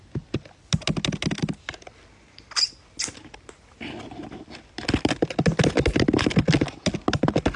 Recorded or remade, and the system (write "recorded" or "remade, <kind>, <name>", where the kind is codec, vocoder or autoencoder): recorded